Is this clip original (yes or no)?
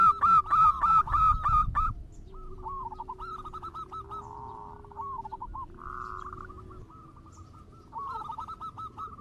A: yes